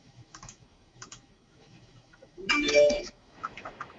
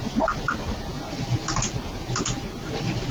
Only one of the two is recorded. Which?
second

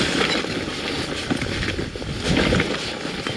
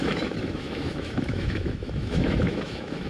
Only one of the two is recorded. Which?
first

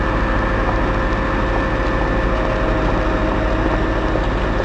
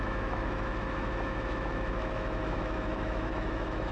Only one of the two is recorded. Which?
first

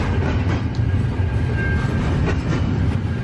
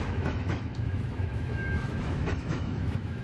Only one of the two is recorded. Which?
first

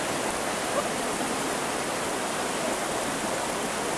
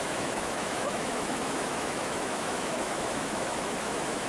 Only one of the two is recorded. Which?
first